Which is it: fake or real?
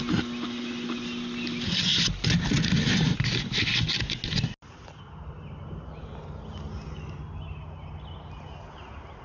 real